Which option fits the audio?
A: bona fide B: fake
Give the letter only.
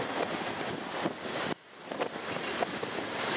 A